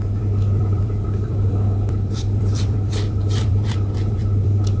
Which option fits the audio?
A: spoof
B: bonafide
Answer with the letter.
A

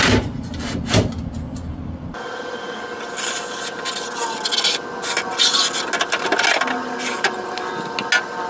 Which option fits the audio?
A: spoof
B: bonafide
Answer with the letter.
B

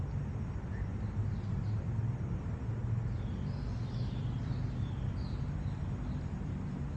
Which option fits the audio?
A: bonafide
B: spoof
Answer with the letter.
A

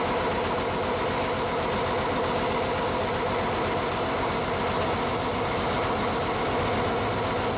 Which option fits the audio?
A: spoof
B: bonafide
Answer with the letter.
B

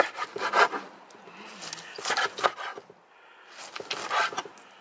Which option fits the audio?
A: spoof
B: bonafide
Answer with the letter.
B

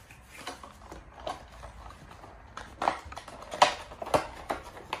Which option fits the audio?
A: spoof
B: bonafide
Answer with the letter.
B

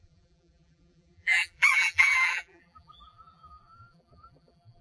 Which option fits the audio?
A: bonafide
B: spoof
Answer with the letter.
B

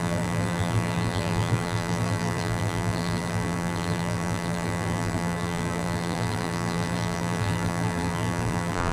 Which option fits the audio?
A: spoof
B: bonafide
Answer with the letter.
A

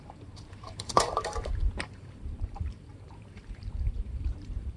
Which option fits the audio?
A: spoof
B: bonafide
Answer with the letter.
A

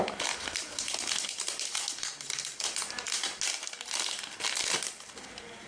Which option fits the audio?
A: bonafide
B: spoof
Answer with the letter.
A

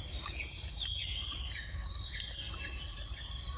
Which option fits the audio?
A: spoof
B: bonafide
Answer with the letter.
A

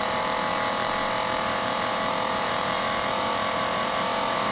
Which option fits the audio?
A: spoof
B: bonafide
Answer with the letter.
A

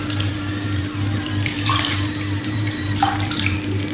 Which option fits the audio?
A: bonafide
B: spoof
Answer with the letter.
B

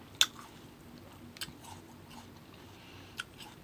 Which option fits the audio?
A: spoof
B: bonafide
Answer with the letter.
B